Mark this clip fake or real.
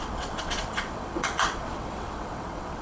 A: fake